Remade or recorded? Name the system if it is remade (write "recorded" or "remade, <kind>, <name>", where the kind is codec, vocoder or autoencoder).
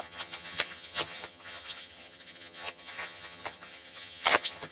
remade, vocoder, HiFi-GAN